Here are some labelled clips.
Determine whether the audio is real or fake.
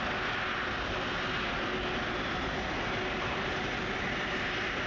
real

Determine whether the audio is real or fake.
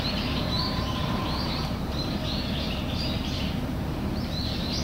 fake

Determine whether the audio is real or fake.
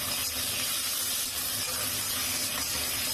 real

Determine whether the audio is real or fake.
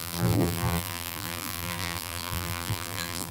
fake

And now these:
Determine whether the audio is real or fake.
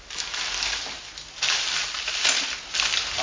real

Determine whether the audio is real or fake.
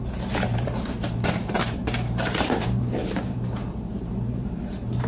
fake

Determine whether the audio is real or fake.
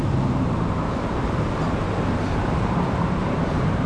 fake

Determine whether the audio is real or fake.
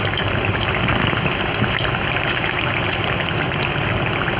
fake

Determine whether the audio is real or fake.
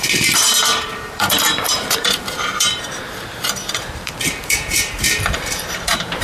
fake